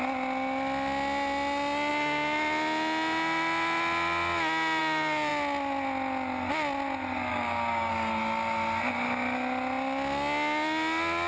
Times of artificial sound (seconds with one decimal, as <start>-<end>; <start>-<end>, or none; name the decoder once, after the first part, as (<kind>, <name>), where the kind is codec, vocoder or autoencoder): 7.3-7.9 (codec, DAC)